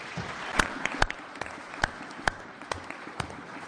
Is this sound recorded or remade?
remade